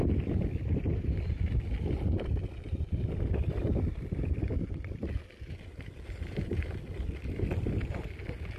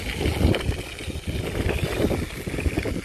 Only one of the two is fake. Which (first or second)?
first